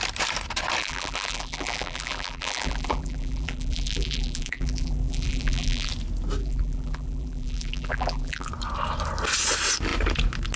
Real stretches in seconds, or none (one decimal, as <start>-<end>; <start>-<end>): 0.0-0.8; 5.9-6.4; 8.5-10.6